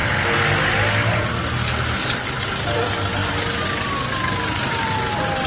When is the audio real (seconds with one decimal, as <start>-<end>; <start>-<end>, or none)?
0.0-5.5